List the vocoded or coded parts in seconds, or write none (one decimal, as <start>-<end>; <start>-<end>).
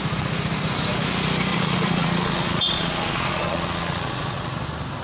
1.5-4.5